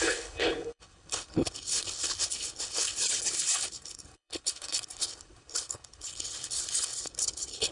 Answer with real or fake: fake